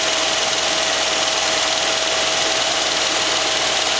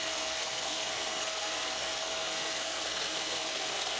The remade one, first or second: second